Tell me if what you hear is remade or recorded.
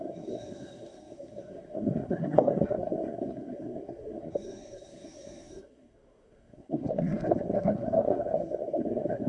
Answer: remade